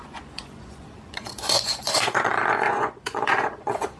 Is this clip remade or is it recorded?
remade